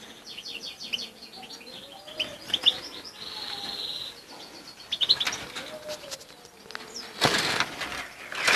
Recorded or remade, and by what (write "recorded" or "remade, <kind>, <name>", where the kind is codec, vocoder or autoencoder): recorded